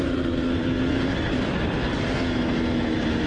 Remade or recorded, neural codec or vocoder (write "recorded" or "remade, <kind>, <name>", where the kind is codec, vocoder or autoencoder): recorded